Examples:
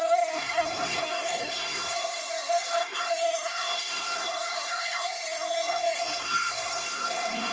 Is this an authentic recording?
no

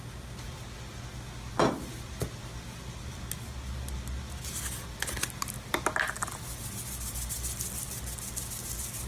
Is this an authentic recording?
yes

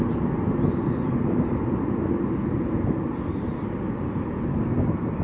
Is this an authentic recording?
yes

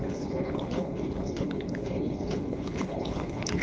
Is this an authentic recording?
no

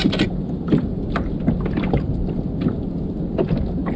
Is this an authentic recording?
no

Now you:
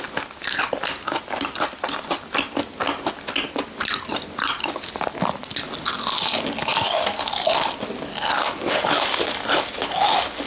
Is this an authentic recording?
yes